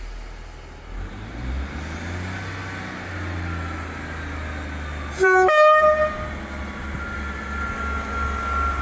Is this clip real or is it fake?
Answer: real